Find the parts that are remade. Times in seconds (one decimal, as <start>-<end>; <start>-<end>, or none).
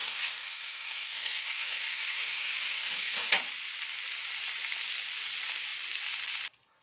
0.0-3.3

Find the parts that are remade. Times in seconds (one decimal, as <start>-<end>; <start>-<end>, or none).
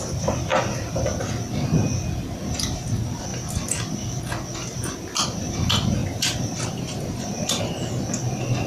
3.3-4.2; 6.0-7.6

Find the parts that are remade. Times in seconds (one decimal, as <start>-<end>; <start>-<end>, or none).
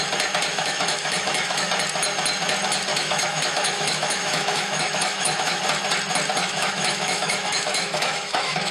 0.5-1.7; 2.9-5.6; 6.4-8.7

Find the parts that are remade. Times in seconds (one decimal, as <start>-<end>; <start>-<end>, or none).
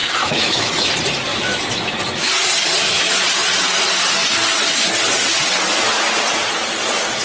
0.0-0.9; 1.3-2.3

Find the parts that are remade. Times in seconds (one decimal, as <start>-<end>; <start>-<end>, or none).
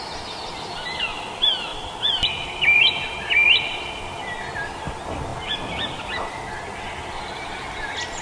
1.7-3.1; 5.3-6.0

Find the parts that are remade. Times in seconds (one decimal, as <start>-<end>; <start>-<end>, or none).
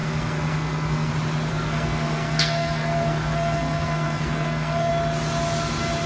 0.0-1.1; 1.5-4.9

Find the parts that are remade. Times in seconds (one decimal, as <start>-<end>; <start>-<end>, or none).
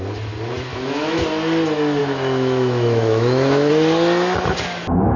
0.7-1.2; 2.0-3.7